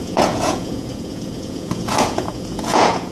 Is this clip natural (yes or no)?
no